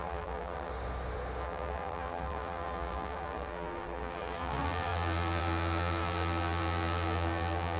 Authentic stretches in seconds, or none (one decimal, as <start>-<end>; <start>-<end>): 0.7-1.4